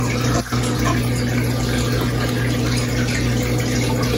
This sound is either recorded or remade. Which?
recorded